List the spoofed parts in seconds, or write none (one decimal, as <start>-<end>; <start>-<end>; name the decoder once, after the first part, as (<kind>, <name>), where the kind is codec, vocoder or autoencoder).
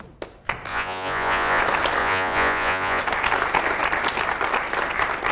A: 0.7-1.6 (vocoder, Vocos); 2.0-3.0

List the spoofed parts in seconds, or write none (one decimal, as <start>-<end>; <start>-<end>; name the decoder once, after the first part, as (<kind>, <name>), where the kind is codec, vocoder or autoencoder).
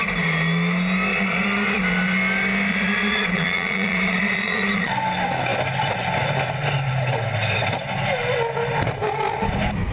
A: 1.1-1.8 (vocoder, Vocos); 2.7-4.9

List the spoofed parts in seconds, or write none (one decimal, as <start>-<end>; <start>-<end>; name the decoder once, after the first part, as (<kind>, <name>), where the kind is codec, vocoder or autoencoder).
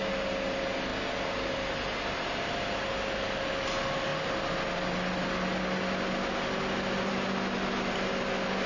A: none